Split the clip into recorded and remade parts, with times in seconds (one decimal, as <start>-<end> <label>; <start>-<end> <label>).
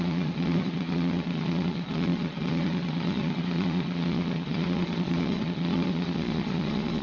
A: 0.0-7.0 remade